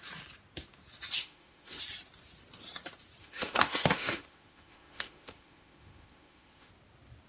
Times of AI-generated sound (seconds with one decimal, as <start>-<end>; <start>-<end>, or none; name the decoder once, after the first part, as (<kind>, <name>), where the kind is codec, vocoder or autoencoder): 1.2-1.8 (autoencoder, DAC-VAE); 3.2-6.7